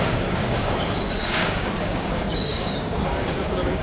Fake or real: fake